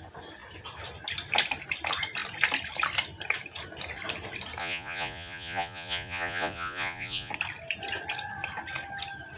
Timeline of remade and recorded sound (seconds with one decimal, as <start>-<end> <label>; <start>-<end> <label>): 0.0-4.6 recorded; 4.6-7.3 remade; 7.3-9.4 recorded